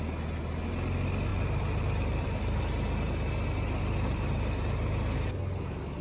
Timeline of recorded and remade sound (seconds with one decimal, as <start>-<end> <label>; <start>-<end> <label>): 0.0-1.3 recorded; 1.3-2.6 remade; 2.6-4.1 recorded; 4.1-4.8 remade; 4.8-6.0 recorded